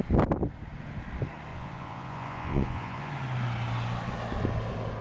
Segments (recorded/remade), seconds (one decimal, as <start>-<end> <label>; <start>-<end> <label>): 0.0-1.5 recorded; 1.5-3.1 remade; 3.1-5.0 recorded